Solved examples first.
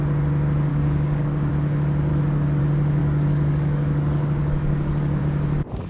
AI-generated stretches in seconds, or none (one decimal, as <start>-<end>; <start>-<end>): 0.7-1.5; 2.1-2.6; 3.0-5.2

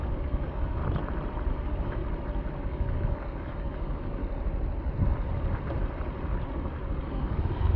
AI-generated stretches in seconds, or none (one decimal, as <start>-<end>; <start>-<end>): 0.0-0.8; 1.5-2.0; 2.6-4.2; 7.0-7.8

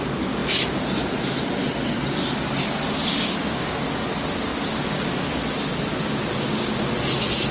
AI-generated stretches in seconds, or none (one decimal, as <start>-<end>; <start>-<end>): 3.0-3.8

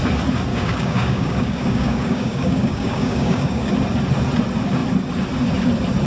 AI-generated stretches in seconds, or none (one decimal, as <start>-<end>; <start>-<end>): 0.5-3.7

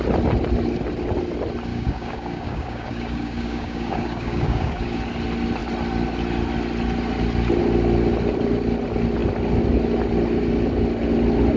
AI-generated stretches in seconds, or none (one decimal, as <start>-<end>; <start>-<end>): 1.7-5.0